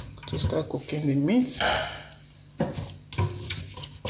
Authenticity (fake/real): real